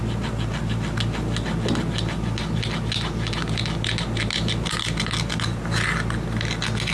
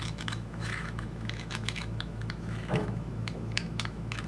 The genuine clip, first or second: first